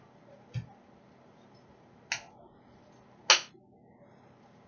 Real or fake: real